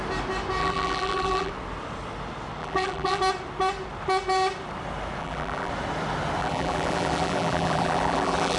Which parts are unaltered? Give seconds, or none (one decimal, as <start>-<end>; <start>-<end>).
0.0-0.6; 1.5-2.6; 3.2-5.2; 5.7-6.4